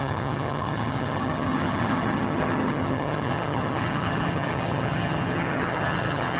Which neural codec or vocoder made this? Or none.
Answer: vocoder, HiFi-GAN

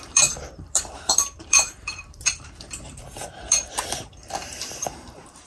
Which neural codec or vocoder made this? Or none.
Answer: vocoder, BigVGAN v2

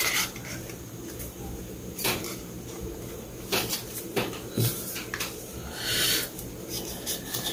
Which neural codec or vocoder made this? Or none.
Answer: vocoder, BigVGAN v2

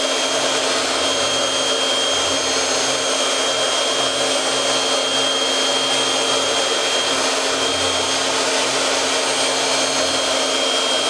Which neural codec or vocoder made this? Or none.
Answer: none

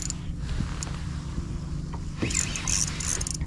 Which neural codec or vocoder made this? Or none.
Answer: none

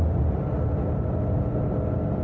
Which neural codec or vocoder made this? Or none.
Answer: none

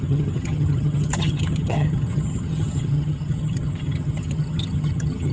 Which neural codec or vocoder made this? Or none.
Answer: vocoder, HiFi-GAN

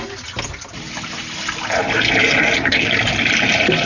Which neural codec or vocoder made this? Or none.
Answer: none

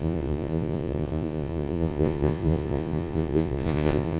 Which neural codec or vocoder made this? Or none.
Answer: vocoder, Vocos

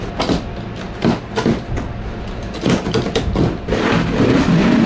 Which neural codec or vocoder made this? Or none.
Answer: none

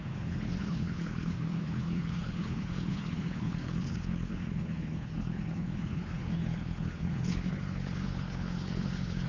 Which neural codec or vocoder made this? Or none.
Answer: codec, HILCodec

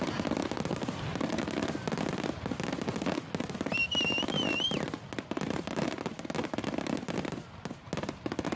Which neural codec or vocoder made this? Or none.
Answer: none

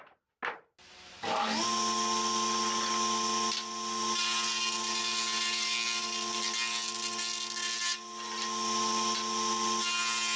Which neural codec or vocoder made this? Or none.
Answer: none